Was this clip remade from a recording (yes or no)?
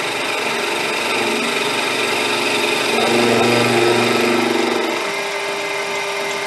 no